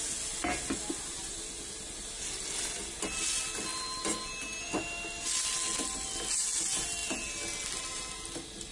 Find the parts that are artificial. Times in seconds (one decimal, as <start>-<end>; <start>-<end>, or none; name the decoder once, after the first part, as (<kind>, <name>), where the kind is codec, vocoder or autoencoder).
none